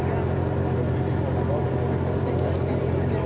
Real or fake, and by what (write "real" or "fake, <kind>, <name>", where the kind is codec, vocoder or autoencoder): real